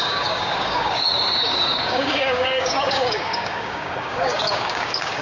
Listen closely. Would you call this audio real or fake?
fake